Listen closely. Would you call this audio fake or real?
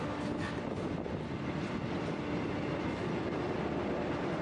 real